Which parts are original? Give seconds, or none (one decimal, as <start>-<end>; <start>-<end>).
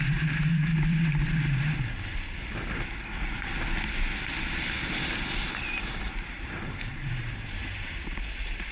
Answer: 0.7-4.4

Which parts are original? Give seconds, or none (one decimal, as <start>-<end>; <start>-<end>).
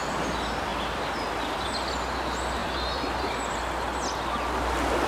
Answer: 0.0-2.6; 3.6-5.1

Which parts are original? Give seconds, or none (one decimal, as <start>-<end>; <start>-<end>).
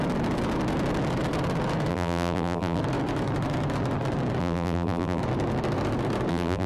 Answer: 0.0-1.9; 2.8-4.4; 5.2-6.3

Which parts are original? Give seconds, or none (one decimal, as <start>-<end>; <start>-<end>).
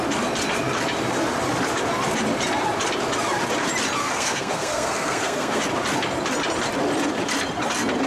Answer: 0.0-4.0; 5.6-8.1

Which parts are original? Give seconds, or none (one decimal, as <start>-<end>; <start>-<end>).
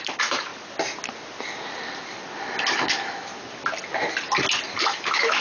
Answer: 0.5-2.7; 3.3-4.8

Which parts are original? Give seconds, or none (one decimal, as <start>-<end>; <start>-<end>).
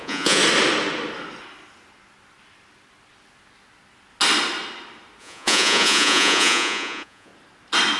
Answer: 0.4-5.2; 7.3-8.0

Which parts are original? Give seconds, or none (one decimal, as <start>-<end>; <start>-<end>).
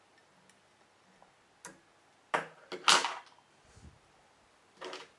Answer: 0.0-5.2